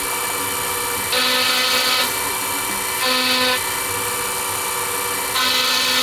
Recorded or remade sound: recorded